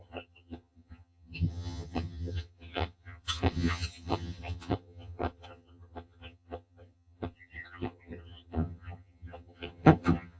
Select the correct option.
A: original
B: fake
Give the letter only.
B